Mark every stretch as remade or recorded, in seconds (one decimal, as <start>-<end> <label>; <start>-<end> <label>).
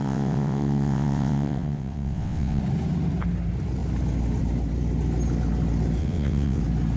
0.0-2.6 remade; 2.6-6.0 recorded; 6.0-6.6 remade; 6.6-7.0 recorded